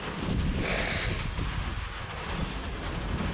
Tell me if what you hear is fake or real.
real